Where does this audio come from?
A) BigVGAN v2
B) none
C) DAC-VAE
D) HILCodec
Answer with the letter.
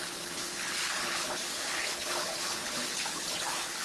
D